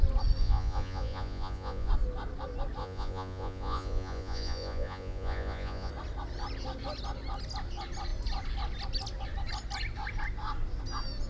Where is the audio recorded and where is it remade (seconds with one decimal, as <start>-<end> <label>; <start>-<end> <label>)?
0.0-0.4 recorded; 0.4-1.9 remade; 1.9-2.8 recorded; 2.8-5.9 remade; 5.9-11.3 recorded